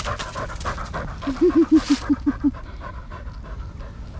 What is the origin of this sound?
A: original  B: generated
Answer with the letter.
A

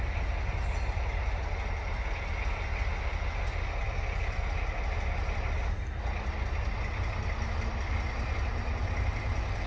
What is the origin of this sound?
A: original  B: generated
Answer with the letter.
A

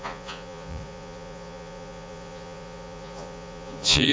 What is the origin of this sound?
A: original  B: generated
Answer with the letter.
B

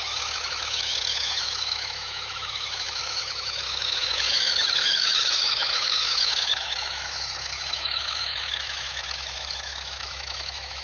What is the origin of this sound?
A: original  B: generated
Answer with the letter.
B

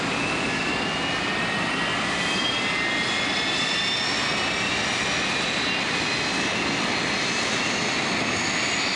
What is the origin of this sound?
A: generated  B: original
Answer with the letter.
B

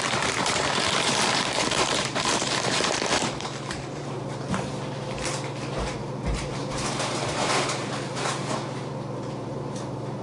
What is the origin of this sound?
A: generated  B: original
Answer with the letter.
A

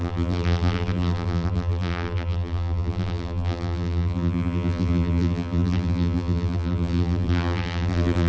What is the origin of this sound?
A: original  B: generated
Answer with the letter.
B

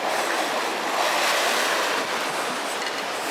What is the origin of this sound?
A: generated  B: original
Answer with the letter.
B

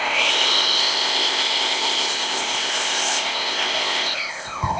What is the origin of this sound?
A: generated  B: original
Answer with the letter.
A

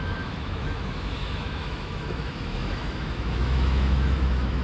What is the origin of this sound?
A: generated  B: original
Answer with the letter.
A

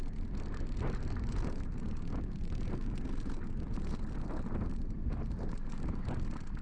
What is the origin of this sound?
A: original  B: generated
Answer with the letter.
A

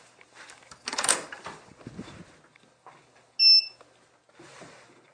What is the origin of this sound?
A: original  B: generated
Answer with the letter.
A